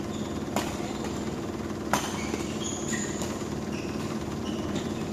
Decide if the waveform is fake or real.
real